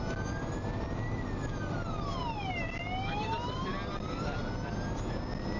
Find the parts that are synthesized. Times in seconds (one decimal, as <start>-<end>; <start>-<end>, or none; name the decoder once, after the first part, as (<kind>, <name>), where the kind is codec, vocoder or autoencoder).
none